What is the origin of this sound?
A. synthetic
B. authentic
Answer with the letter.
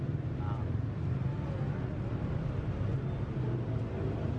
B